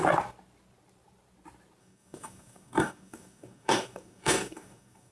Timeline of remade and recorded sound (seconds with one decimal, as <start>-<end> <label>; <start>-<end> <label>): 0.0-1.8 recorded; 1.8-5.1 remade